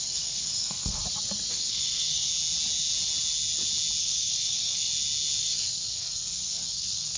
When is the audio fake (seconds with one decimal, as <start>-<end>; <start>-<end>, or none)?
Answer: 0.0-1.0; 1.5-2.3; 4.0-4.9; 5.4-7.2